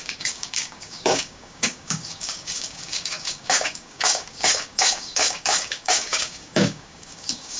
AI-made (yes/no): yes